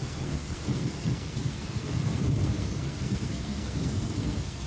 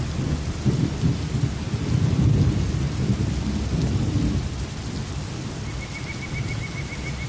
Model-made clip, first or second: first